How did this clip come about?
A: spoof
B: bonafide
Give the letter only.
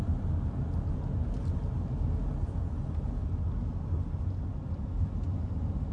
B